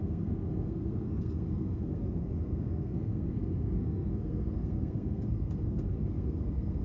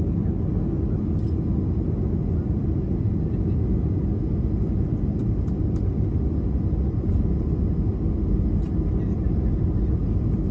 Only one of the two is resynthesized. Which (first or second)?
first